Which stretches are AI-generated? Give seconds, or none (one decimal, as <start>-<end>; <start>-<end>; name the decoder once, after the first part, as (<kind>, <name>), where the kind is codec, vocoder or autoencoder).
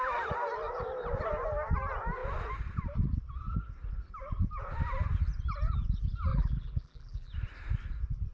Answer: 6.3-7.3 (vocoder, BigVGAN v2)